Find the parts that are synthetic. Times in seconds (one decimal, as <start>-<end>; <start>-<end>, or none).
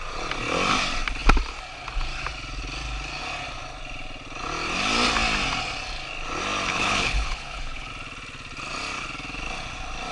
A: 6.7-7.9